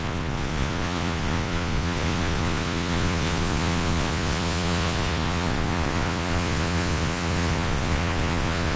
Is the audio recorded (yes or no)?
no